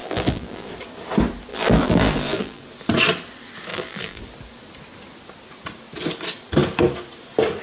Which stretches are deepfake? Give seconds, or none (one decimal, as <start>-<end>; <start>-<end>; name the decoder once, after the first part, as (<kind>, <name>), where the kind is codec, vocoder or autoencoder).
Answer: 0.0-0.7 (vocoder, BigVGAN v2); 1.5-2.6; 3.7-4.2